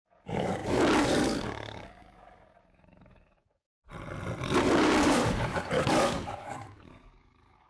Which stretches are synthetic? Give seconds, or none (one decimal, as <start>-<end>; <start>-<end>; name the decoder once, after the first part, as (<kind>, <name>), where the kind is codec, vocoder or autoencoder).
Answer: 0.0-3.8 (codec, DAC); 4.7-7.7